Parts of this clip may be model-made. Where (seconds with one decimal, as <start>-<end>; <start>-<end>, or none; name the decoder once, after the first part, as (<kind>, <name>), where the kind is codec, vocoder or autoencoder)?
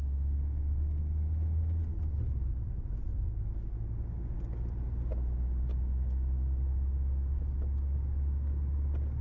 none